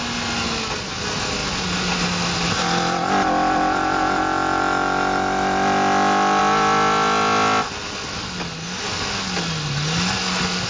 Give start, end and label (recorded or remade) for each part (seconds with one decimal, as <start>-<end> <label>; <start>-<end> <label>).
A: 0.0-10.7 recorded